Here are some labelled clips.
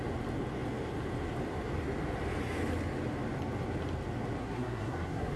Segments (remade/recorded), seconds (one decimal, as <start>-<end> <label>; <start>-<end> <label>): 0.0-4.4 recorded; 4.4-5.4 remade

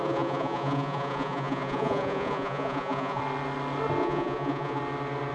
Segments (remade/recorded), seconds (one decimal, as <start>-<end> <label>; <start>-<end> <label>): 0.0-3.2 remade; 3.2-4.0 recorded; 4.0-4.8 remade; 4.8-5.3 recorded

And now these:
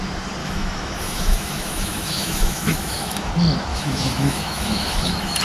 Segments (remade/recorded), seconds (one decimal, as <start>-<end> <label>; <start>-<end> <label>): 0.0-0.4 recorded; 0.4-3.3 remade; 3.3-3.7 recorded; 3.7-5.4 remade